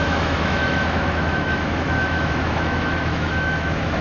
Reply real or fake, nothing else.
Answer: fake